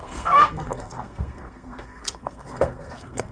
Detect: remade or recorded remade